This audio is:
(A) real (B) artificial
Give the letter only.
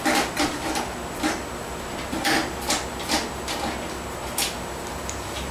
A